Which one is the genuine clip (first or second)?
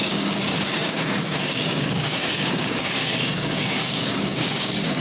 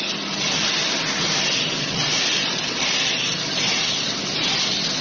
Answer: second